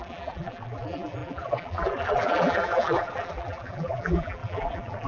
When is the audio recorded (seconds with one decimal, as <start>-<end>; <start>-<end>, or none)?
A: none